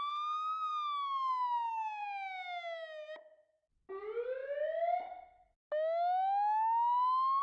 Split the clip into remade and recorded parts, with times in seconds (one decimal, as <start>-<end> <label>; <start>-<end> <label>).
0.0-7.4 recorded